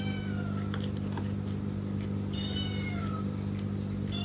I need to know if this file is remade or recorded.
recorded